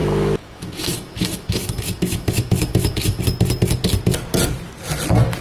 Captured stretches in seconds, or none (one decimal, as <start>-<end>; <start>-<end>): 3.2-5.4